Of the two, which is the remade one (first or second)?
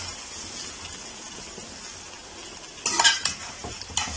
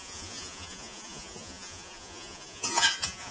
second